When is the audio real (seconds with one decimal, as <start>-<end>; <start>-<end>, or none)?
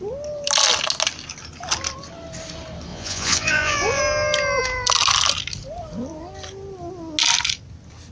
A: 0.0-2.9; 4.0-8.1